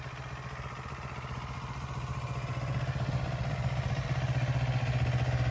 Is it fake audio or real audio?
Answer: real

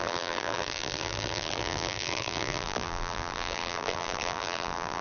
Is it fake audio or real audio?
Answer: fake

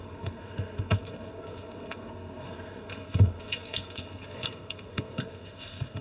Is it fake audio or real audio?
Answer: fake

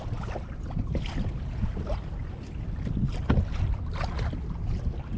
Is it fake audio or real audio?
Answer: real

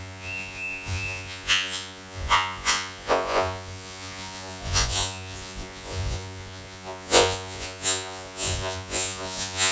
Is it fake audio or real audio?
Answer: fake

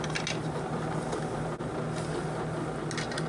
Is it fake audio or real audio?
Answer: real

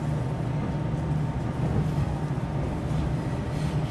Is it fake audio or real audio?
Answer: real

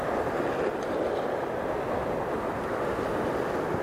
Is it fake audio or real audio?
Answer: real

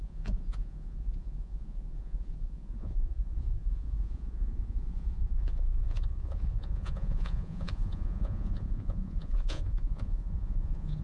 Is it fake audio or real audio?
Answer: fake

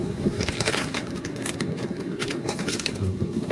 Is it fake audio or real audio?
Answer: fake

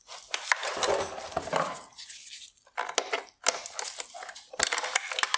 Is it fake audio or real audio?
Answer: real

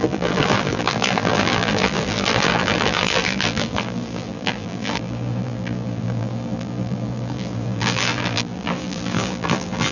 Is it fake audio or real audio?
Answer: fake